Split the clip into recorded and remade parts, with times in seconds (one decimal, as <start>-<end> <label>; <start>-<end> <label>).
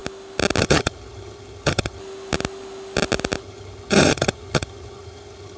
0.0-0.6 recorded; 0.6-2.0 remade; 2.0-3.4 recorded; 3.4-5.6 remade